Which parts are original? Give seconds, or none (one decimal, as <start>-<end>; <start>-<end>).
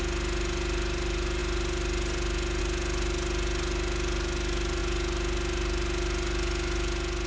0.0-7.3